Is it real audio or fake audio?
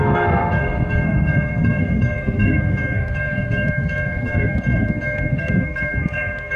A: fake